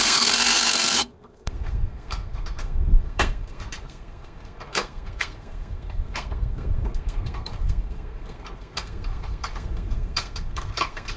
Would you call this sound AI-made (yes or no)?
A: yes